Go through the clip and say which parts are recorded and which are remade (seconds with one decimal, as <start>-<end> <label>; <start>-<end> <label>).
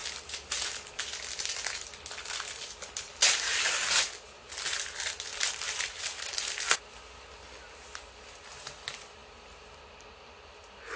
0.0-5.3 recorded; 5.3-6.0 remade; 6.0-11.0 recorded